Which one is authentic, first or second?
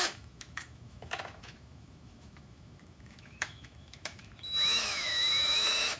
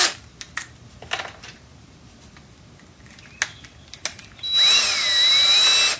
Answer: second